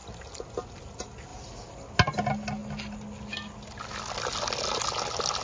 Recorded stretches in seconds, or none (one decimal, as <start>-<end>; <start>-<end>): 0.0-5.4